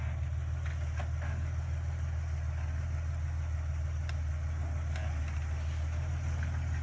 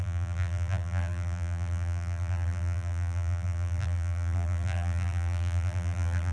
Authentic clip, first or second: first